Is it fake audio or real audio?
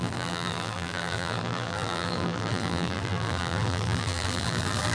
fake